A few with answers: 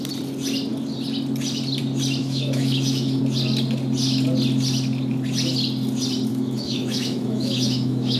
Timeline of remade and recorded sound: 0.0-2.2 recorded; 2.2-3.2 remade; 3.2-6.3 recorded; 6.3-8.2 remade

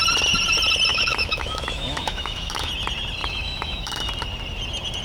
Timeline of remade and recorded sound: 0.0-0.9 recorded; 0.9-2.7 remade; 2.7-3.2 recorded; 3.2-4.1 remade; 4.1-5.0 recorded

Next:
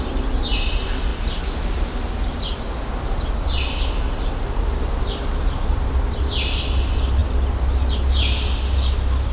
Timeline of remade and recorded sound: 0.0-9.3 recorded